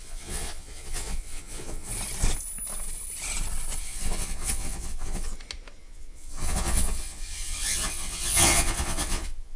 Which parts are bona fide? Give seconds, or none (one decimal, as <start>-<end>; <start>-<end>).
1.9-3.8; 5.3-5.8